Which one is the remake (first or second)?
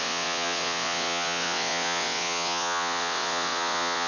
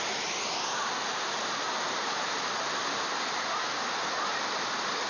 first